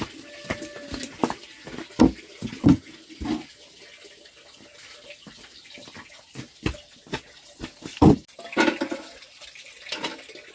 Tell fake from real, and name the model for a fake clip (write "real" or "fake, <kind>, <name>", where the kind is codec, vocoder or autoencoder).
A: real